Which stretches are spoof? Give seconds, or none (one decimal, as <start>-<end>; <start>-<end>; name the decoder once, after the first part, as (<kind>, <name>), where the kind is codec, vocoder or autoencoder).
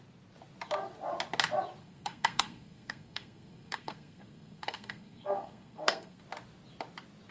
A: 1.8-6.2 (codec, SNAC)